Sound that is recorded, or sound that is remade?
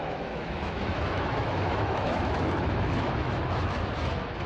remade